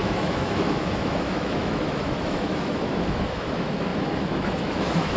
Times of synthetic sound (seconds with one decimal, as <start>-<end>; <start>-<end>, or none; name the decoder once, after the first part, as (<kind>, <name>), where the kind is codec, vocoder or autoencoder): 0.0-5.2 (autoencoder, DAC-VAE)